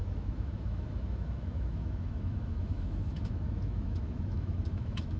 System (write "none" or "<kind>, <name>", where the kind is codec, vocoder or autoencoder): autoencoder, DAC-VAE